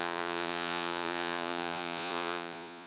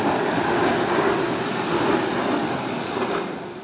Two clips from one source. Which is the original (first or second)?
second